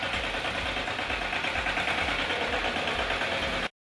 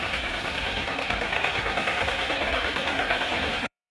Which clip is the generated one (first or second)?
second